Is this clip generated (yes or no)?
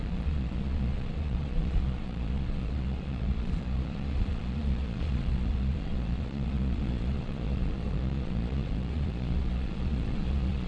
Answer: yes